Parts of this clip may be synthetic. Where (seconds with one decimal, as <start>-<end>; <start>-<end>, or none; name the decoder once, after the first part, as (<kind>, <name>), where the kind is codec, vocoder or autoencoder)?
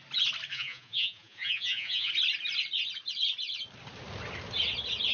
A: 0.5-2.1 (vocoder, Vocos)